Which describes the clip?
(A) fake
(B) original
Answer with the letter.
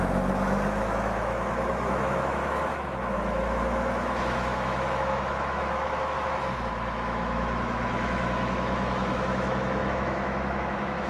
A